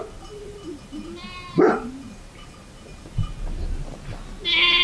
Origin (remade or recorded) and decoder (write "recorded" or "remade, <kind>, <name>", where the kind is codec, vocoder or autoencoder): recorded